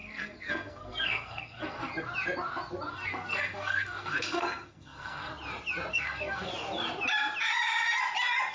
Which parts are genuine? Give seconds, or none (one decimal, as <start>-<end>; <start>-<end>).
1.9-2.9; 5.3-5.9; 6.5-8.5